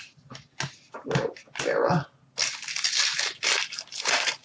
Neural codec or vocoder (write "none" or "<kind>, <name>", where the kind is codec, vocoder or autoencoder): none